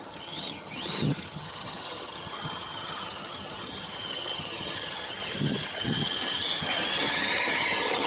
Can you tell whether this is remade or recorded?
remade